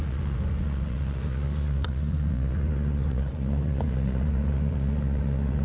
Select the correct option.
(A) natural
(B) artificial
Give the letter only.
B